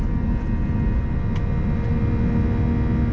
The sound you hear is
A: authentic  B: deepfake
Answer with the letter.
A